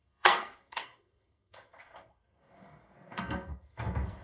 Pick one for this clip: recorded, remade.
remade